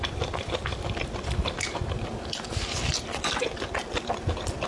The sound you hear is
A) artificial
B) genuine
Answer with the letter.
B